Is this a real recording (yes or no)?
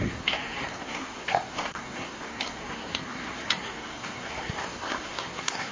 no